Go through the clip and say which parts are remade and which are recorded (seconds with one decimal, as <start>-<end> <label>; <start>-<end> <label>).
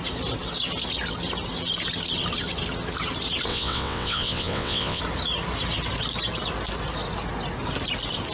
0.0-3.5 recorded; 3.5-5.0 remade; 5.0-8.3 recorded